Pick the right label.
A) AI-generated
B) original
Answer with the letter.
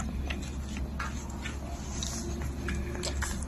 B